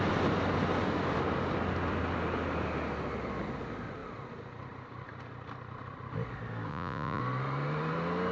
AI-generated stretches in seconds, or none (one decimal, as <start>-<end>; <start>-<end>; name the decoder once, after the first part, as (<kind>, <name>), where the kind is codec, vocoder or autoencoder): 6.7-7.2 (vocoder, Vocos)